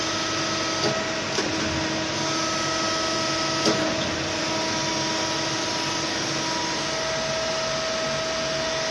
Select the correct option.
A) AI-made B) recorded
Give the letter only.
B